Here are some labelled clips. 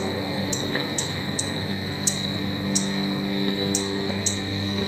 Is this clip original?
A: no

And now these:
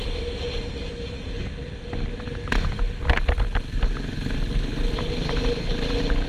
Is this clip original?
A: yes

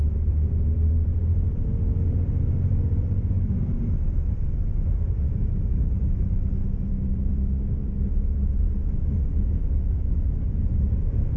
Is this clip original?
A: no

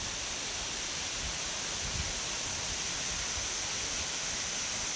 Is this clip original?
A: yes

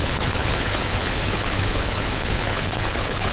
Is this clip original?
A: no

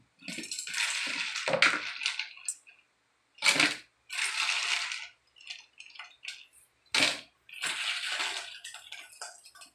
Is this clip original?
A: yes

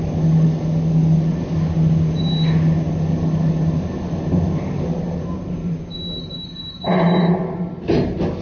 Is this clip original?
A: yes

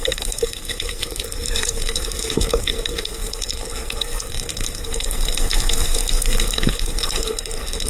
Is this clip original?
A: no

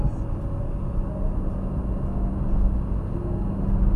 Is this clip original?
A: yes